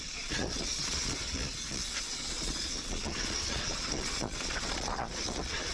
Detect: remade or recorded remade